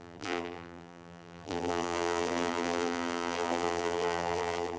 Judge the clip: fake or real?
fake